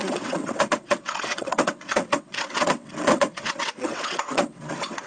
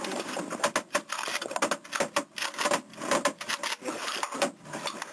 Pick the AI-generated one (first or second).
first